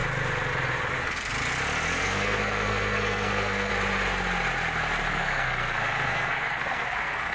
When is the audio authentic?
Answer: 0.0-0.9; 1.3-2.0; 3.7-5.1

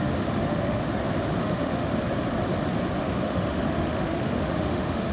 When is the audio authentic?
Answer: 0.8-1.4; 1.9-3.0

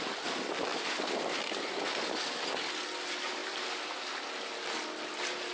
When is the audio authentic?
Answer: 0.0-0.7; 2.5-5.5

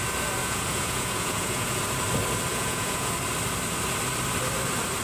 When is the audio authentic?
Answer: 0.0-0.4; 1.8-2.5; 3.1-5.0

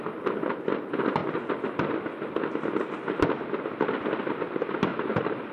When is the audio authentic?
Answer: 0.0-4.9

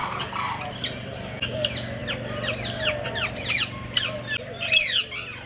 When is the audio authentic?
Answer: 0.0-5.5

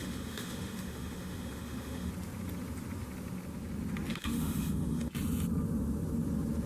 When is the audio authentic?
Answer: 2.1-4.1; 5.1-6.7